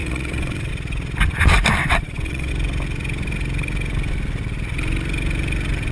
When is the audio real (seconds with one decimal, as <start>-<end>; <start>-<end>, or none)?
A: 0.7-1.8; 2.5-5.9